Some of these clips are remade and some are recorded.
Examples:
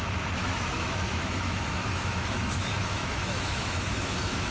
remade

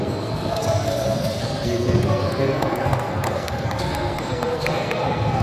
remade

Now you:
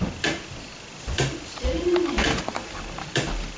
remade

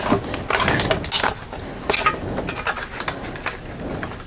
recorded